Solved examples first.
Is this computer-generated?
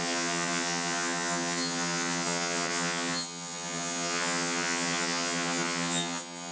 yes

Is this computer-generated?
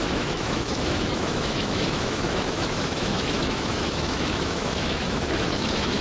yes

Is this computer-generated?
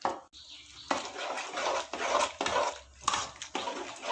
no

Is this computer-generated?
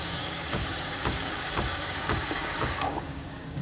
yes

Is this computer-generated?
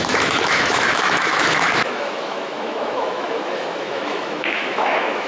yes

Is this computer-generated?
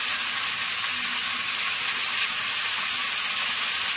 no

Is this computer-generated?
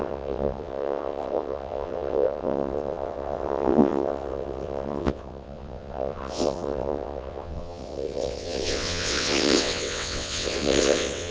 yes